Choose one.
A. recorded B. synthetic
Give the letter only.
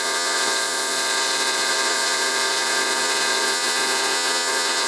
B